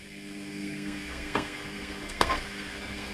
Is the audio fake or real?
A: fake